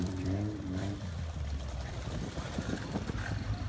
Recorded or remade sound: remade